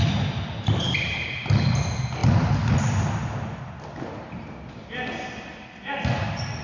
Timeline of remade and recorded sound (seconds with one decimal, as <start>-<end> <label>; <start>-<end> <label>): 0.0-6.6 recorded